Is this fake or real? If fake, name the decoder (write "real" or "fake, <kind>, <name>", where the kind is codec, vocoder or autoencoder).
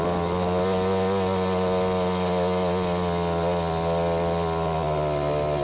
real